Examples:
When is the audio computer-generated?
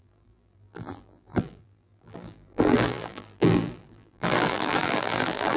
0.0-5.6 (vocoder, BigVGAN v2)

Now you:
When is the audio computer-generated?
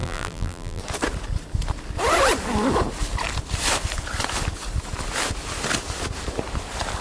0.0-0.8 (vocoder, BigVGAN v2)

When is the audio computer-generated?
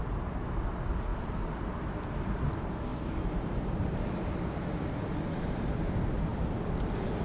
2.9-5.2 (vocoder, BigVGAN v2); 6.3-7.2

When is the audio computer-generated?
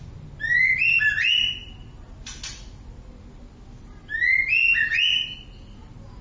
none